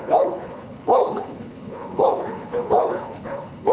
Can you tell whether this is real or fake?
fake